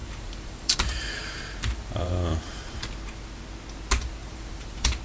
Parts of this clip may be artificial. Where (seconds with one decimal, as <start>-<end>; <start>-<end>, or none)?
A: 0.0-2.8; 4.2-5.0